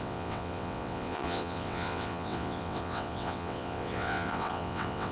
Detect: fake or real fake